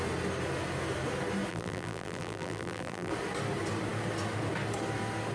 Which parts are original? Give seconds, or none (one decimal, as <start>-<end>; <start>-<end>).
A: 0.0-1.5; 3.1-5.3